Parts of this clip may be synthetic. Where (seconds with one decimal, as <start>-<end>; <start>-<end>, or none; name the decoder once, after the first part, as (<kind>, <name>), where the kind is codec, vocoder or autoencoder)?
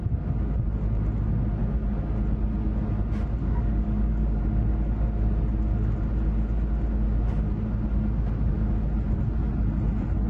3.4-4.4 (codec, DAC)